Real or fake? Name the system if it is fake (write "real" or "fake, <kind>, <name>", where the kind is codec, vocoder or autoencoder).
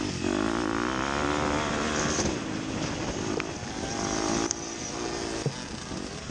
real